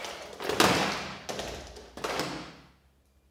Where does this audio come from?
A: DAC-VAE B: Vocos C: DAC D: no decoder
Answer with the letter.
D